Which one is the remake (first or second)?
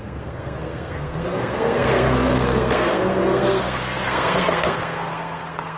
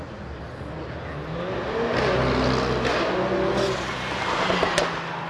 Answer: first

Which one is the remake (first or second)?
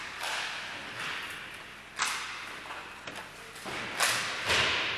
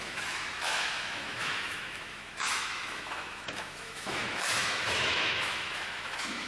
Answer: second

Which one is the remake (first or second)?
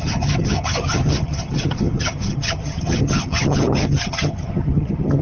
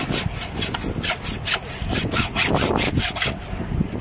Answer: first